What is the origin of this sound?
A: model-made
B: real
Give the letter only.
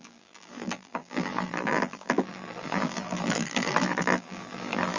A